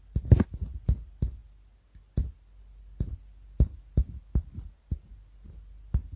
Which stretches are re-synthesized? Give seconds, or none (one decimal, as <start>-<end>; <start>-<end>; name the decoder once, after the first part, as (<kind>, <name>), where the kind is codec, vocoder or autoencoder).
none